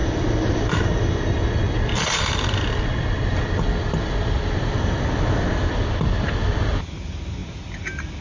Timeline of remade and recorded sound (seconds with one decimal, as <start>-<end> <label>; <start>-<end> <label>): 0.0-8.2 recorded